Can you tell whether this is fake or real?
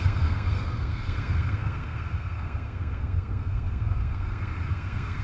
fake